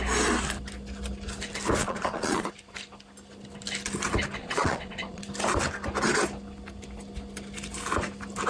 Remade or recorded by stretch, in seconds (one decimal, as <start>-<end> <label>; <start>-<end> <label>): 0.0-1.8 recorded; 1.8-2.5 remade; 2.5-4.4 recorded; 4.4-5.2 remade; 5.2-8.5 recorded

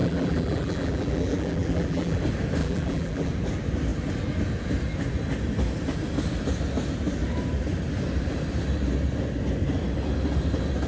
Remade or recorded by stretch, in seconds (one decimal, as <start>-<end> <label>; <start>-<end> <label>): 0.0-2.2 remade; 2.2-2.6 recorded; 2.6-3.3 remade; 3.3-10.9 recorded

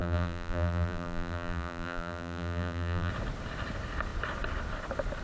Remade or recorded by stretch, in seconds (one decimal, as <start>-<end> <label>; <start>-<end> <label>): 0.0-3.1 remade; 3.1-5.2 recorded

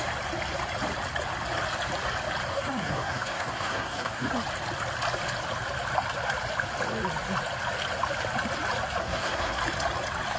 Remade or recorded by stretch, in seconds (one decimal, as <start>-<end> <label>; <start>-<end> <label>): 0.0-2.5 recorded; 2.5-4.3 remade; 4.3-9.0 recorded; 9.0-9.6 remade; 9.6-10.4 recorded

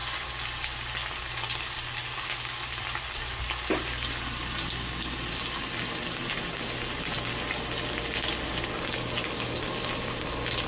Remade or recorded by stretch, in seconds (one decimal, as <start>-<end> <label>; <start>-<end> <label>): 0.0-10.7 recorded

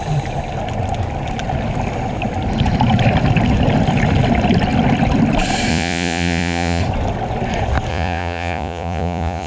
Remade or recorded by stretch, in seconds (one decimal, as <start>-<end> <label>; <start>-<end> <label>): 0.0-5.7 recorded; 5.7-6.8 remade; 6.8-7.9 recorded; 7.9-9.5 remade